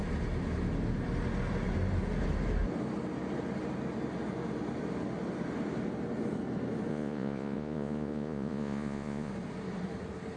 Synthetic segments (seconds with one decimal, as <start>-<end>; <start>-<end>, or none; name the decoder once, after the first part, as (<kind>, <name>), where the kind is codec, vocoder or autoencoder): 6.9-9.3 (vocoder, Vocos)